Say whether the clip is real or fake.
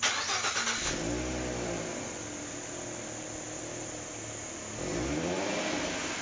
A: real